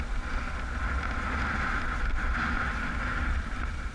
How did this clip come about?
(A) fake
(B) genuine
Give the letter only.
B